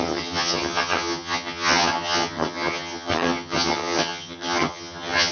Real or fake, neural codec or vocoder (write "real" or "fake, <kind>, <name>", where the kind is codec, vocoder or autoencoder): fake, vocoder, HiFi-GAN